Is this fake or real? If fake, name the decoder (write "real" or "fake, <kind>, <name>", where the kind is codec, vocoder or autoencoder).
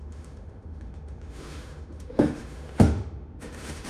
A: fake, autoencoder, DAC-VAE